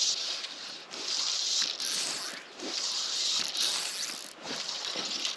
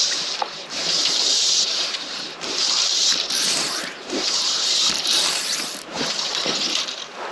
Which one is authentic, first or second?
first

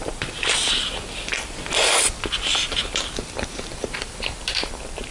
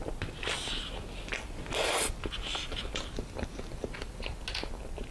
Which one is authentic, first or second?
second